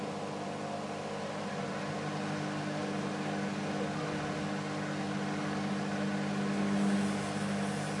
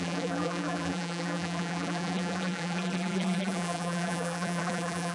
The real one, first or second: first